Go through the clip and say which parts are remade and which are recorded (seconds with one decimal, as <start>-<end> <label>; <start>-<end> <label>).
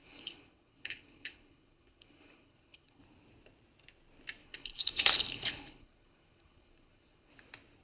0.0-3.0 remade; 3.0-4.4 recorded; 4.4-7.3 remade; 7.3-7.8 recorded